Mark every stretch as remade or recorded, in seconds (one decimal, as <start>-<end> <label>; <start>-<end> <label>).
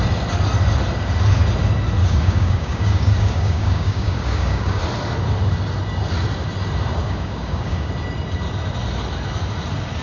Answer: 0.0-2.0 recorded; 2.0-4.8 remade; 4.8-7.0 recorded; 7.0-7.9 remade; 7.9-10.0 recorded